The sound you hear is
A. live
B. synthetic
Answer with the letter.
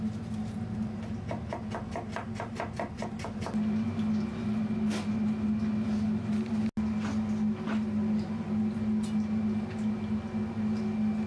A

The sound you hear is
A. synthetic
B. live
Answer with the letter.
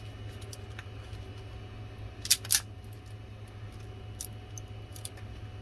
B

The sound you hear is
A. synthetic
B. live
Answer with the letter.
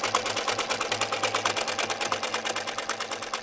B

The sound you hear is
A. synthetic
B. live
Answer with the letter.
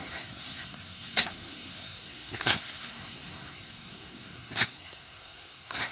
A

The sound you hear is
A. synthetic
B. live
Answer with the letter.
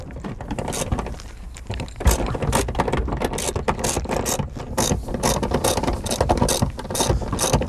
B